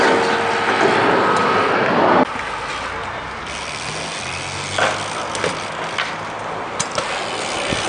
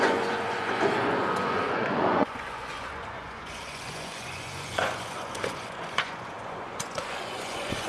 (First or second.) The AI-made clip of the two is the second